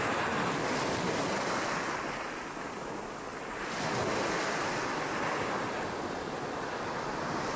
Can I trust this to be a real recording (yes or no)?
yes